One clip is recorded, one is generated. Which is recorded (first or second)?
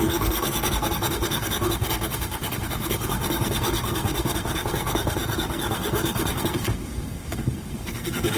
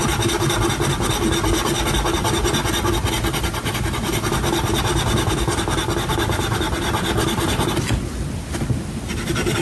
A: second